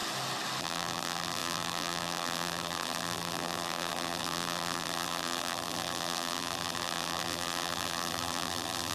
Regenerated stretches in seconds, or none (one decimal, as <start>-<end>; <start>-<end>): 0.6-8.9